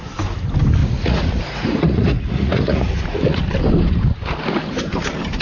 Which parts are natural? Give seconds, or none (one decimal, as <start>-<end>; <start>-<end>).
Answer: 0.0-0.8; 3.4-5.4